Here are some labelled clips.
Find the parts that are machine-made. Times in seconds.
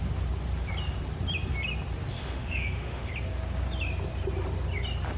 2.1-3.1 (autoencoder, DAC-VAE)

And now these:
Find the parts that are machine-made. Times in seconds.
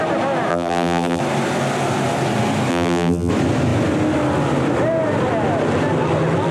0.5-1.2 (vocoder, BigVGAN v2); 2.7-3.3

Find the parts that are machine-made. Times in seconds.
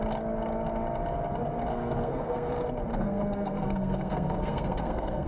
1.7-2.5 (codec, SNAC); 2.9-5.3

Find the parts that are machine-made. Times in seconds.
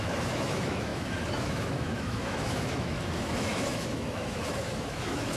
0.0-5.4 (autoencoder, DAC-VAE)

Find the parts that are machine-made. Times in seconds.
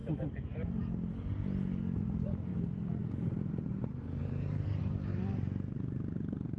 0.0-0.7 (vocoder, BigVGAN v2); 2.5-3.3; 4.2-4.8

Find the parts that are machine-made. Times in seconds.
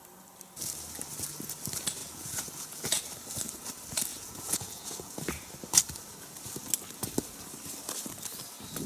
2.0-3.0 (vocoder, Vocos); 4.1-5.2